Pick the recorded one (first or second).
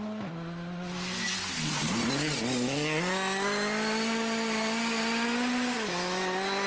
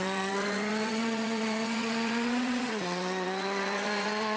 first